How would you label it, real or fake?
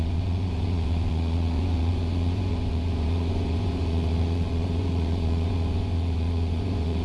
fake